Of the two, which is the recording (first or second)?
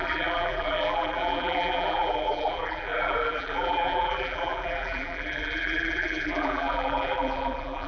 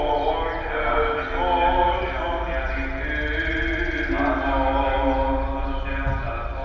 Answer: second